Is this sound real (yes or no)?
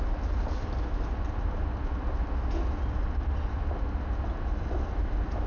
yes